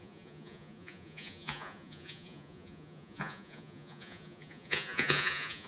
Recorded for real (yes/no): no